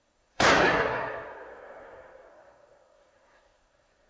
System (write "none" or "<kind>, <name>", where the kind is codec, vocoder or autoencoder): codec, SNAC